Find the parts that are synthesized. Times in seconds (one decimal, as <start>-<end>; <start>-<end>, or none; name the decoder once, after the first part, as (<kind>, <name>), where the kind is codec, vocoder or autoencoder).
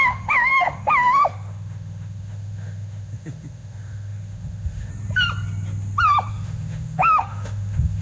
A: 0.0-4.9 (autoencoder, DAC-VAE); 6.3-8.0